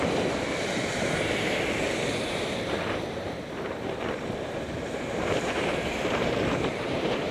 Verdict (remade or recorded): remade